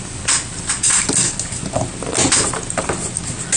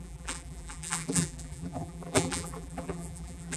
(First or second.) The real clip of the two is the first